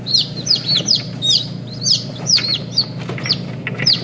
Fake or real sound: real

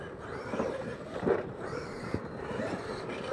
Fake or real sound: fake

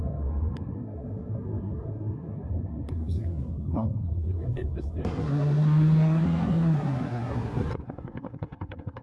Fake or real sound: fake